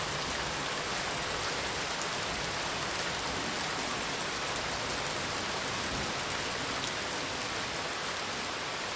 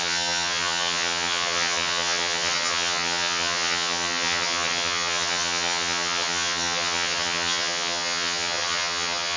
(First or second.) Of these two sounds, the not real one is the second